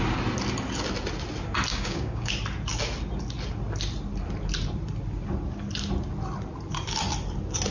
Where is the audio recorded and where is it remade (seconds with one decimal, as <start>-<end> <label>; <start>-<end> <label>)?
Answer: 0.0-1.7 recorded; 1.7-2.3 remade; 2.3-7.7 recorded